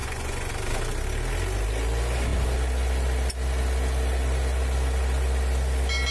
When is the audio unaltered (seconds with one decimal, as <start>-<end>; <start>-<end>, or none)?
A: 0.5-6.1